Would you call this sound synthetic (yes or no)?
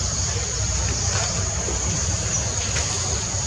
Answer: no